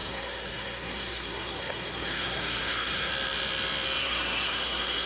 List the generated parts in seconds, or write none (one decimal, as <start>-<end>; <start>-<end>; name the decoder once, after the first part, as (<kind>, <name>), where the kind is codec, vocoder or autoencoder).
0.0-3.1 (codec, SNAC); 4.0-5.1